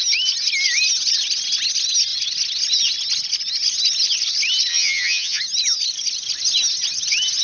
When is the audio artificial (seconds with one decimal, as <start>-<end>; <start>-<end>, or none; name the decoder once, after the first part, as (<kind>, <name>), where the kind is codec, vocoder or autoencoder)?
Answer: 4.7-5.4 (vocoder, HiFi-GAN)